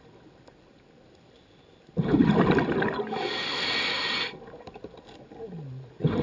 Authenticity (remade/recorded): recorded